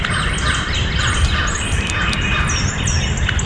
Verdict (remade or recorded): recorded